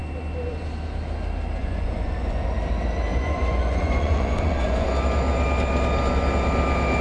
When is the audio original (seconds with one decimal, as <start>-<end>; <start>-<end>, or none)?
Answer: 0.0-1.6; 2.5-3.1; 4.9-7.0